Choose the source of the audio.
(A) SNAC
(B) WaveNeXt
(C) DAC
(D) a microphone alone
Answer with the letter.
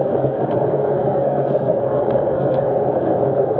A